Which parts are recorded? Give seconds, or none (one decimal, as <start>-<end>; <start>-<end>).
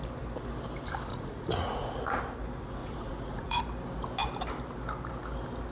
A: 0.0-1.1; 2.2-2.8; 3.6-5.7